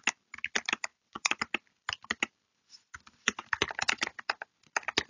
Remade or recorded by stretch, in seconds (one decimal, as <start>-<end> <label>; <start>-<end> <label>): 0.0-0.9 recorded; 0.9-1.4 remade; 1.4-2.5 recorded; 2.5-3.4 remade; 3.4-5.1 recorded